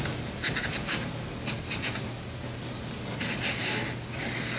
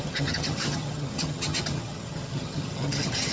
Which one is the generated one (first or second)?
second